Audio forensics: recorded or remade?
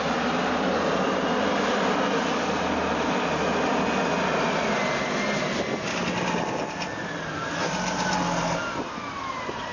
recorded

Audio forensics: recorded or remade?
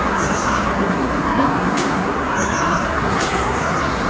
remade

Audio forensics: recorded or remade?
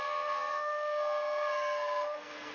remade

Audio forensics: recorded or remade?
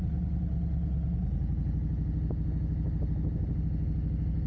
recorded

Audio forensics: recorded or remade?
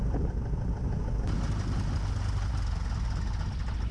recorded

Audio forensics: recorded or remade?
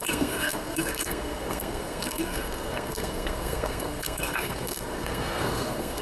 remade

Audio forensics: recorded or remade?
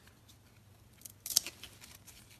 recorded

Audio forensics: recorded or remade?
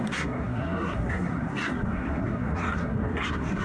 remade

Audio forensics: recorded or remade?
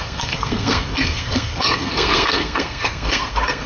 remade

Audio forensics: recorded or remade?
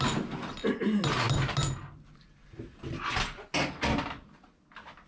recorded